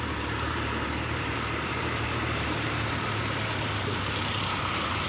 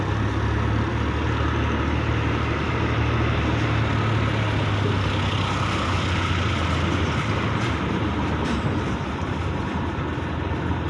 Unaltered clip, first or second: second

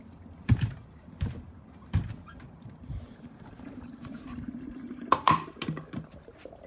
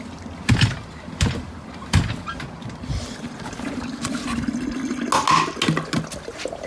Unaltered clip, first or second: second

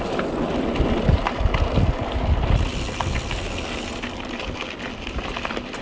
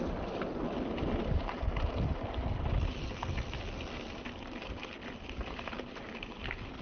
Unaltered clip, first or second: first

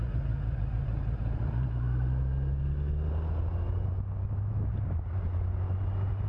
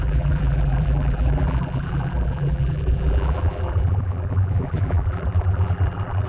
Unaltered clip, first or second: first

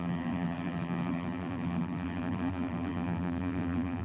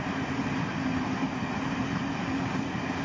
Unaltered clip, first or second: second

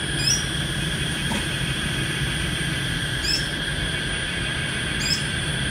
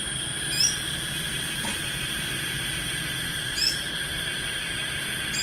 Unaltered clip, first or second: second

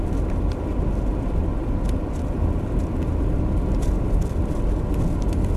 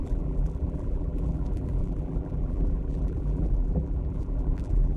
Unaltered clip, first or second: first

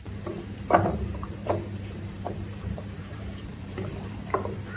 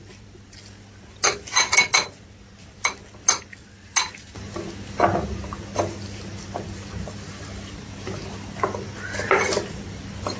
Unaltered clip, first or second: second